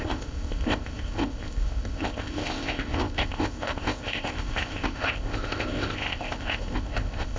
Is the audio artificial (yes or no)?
yes